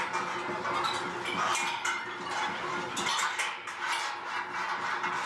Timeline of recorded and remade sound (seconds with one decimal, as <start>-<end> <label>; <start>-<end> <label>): 0.0-5.3 recorded